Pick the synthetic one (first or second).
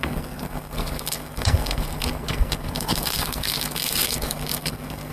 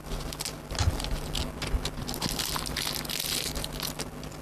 first